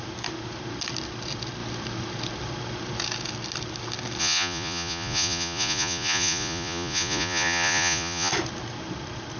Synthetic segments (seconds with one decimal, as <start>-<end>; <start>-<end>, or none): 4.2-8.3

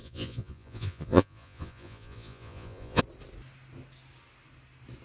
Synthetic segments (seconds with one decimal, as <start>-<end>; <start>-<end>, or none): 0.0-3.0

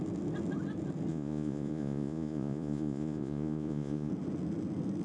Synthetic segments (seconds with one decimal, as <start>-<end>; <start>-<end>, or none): 1.1-4.1

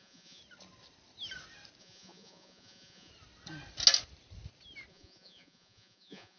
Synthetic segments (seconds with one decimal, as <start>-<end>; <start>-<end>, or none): 0.0-0.4; 1.8-3.1; 4.9-6.4

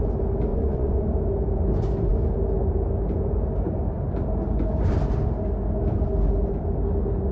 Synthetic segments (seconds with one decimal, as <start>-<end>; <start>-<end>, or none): 0.5-1.0

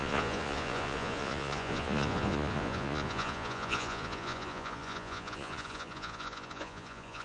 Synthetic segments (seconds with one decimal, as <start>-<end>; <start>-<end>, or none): 0.0-7.2